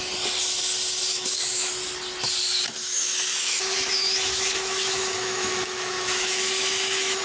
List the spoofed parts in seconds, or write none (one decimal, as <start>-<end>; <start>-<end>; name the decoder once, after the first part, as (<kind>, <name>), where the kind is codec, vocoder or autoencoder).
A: 1.1-1.7 (autoencoder, DAC-VAE); 2.8-7.2